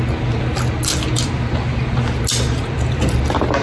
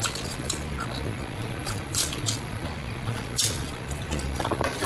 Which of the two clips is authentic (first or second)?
first